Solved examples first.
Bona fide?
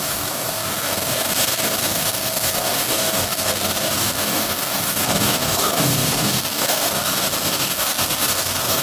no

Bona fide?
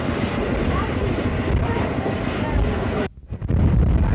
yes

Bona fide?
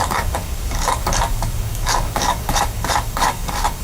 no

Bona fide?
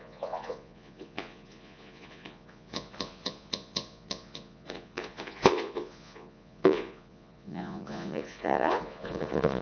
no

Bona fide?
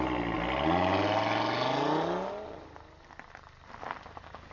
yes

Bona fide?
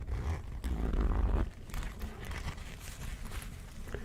yes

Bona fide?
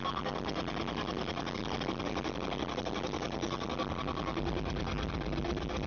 yes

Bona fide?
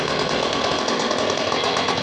no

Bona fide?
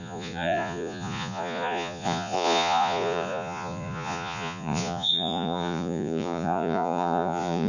no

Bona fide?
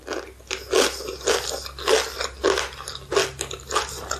yes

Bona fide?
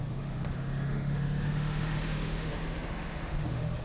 no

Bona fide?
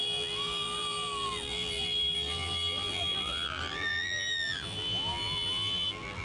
no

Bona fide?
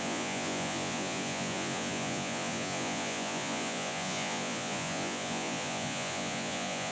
no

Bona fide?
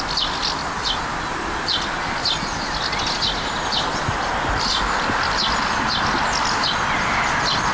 yes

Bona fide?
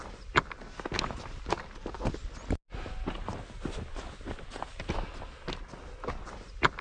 yes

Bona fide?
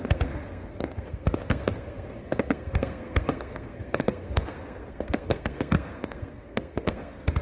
no